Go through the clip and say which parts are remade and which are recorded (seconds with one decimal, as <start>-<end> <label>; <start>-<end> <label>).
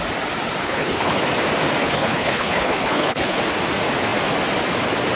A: 0.0-0.6 recorded; 0.6-1.2 remade; 1.2-1.8 recorded; 1.8-3.4 remade; 3.4-5.2 recorded